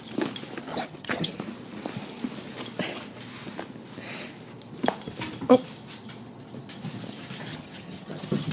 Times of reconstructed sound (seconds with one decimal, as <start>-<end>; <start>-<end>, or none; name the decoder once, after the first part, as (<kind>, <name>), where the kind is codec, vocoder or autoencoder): 0.7-1.4 (vocoder, HiFi-GAN); 7.5-8.5